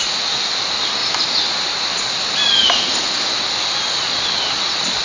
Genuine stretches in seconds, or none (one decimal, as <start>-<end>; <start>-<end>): 0.0-5.0

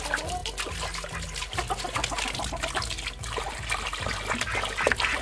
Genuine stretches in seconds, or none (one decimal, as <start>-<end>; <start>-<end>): 0.0-5.2

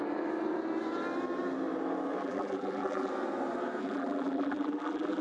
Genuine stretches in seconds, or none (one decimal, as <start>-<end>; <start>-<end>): 0.0-2.2; 3.1-3.8

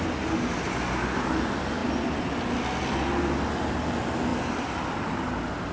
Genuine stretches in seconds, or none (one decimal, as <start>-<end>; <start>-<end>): 0.0-5.7